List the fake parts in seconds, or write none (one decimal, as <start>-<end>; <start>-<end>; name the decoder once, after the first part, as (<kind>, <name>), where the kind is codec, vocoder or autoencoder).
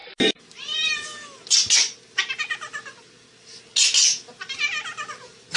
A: none